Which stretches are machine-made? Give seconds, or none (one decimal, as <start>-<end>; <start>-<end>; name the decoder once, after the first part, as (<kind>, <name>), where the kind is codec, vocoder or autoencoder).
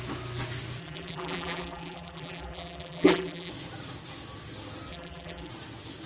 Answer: 0.8-3.5 (vocoder, BigVGAN v2); 4.9-5.5